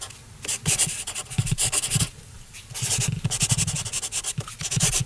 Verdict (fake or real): real